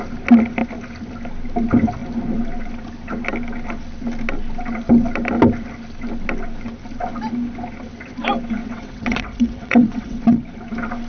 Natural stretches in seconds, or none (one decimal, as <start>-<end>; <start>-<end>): 0.0-8.6; 10.4-11.1

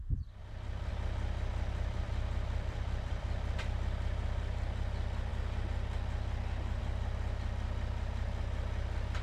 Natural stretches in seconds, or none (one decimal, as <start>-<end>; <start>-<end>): 0.0-0.4; 0.9-1.5; 4.8-9.2

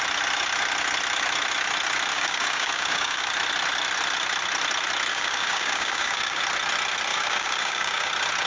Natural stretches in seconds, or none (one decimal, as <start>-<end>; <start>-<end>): 0.0-2.1; 3.3-5.1; 6.4-7.1; 8.1-8.5

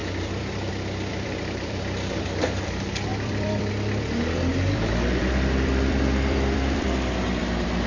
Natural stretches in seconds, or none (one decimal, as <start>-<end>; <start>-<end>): 0.7-1.1; 1.8-3.1; 3.7-4.5

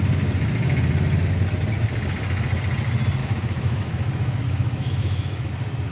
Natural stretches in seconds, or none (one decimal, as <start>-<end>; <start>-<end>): 0.0-3.2; 5.5-5.9

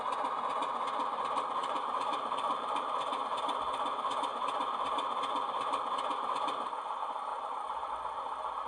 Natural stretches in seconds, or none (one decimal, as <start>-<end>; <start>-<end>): 0.0-1.6; 3.4-7.3; 7.9-8.7